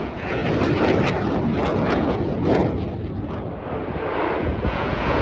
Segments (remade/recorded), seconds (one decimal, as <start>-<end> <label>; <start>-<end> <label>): 0.0-0.4 remade; 0.4-1.9 recorded; 1.9-2.6 remade; 2.6-4.4 recorded; 4.4-5.2 remade